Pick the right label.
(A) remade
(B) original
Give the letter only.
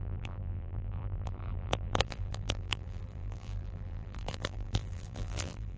A